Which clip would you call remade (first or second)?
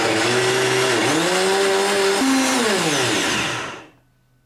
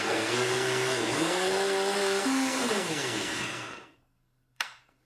second